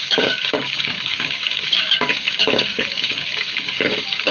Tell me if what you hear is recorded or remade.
remade